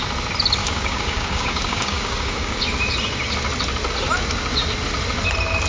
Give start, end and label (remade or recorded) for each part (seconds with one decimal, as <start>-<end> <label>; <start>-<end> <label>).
0.0-0.6 recorded; 0.6-2.6 remade; 2.6-5.7 recorded